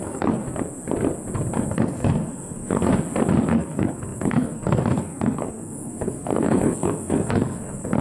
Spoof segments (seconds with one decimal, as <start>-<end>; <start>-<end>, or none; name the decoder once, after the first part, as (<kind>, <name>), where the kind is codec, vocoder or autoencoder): 0.0-0.4 (codec, SNAC); 1.7-2.9; 3.5-8.0